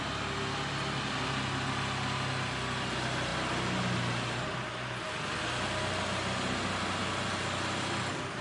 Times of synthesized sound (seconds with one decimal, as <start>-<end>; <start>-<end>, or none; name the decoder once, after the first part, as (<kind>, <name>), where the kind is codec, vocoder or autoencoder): none